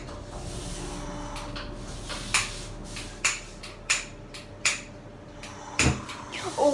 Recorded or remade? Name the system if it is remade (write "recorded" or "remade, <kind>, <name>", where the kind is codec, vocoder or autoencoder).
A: recorded